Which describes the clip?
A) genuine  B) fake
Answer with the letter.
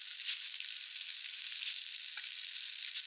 A